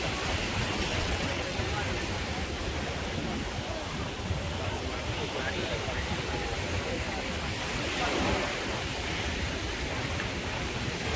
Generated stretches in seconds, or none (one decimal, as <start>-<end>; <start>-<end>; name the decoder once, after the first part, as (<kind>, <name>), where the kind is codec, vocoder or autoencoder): 0.9-1.6 (vocoder, WaveNeXt)